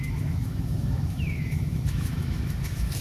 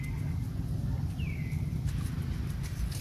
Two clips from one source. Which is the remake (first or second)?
first